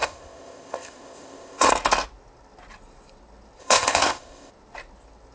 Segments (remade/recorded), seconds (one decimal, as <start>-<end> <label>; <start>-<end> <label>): 0.0-1.7 remade; 1.7-3.6 recorded; 3.6-4.5 remade; 4.5-5.3 recorded